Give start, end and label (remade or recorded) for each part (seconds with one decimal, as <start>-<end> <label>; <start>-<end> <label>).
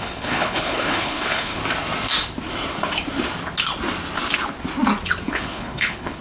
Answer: 0.0-1.6 remade; 1.6-5.3 recorded; 5.3-6.2 remade